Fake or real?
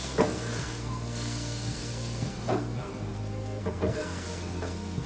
fake